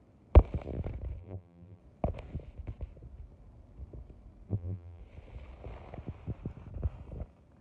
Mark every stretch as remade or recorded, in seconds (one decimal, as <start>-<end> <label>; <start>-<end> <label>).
0.0-1.2 recorded; 1.2-1.8 remade; 1.8-4.5 recorded; 4.5-5.0 remade; 5.0-7.6 recorded